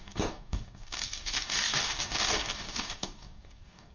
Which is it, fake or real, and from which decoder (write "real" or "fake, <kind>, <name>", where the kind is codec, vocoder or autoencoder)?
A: fake, codec, DAC